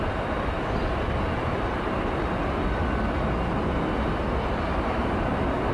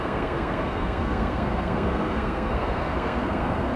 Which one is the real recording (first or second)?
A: first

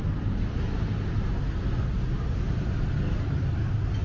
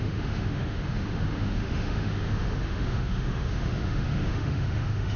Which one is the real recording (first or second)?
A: first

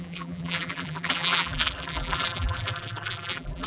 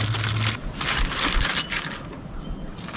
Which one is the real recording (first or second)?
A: second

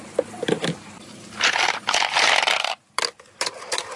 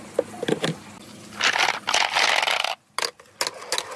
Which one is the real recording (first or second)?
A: second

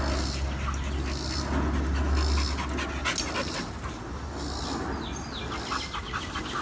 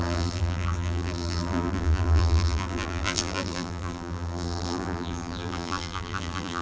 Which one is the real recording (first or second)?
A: first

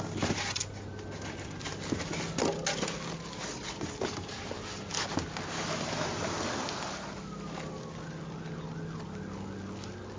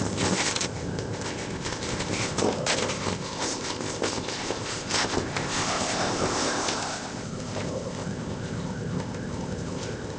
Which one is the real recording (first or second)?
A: first